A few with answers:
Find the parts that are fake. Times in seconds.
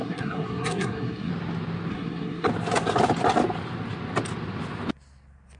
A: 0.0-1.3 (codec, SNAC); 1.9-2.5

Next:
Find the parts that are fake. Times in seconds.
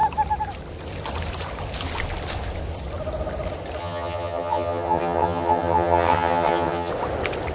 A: 3.8-6.9 (vocoder, HiFi-GAN)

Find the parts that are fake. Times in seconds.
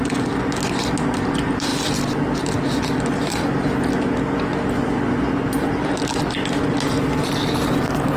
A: none